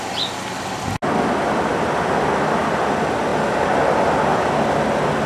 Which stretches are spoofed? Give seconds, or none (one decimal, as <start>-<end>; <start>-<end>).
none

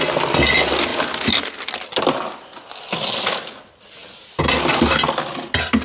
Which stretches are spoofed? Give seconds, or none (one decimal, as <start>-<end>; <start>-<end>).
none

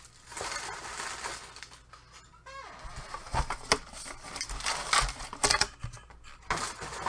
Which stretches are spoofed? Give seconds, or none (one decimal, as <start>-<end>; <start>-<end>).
none

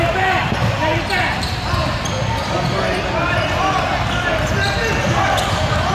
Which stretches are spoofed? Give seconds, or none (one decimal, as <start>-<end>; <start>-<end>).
none

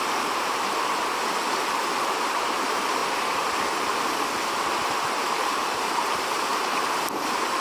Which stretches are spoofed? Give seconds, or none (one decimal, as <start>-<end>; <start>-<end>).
0.0-3.0; 4.8-7.6

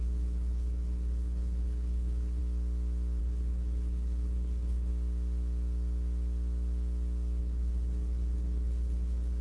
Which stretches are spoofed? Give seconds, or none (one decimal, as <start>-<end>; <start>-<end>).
0.0-2.4; 3.2-4.9; 7.4-9.4

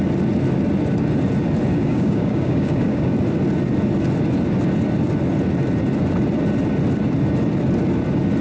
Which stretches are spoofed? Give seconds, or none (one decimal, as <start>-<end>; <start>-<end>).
1.7-3.1